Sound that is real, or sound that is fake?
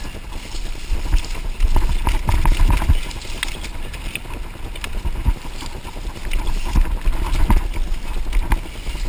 real